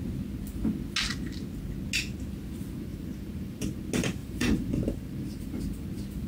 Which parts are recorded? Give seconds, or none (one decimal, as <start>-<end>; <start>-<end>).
0.0-2.9; 3.6-4.2; 5.6-6.3